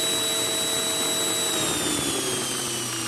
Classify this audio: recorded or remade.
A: recorded